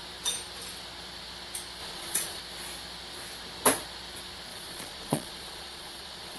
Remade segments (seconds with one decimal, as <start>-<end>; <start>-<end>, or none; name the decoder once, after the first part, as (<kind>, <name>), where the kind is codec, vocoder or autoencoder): 1.8-2.4 (vocoder, Vocos); 4.5-6.4